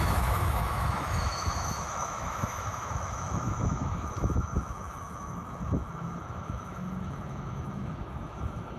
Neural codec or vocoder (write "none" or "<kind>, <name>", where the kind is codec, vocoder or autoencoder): autoencoder, DAC-VAE